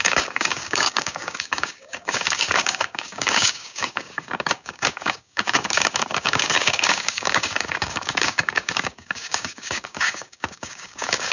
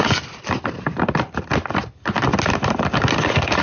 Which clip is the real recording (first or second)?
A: second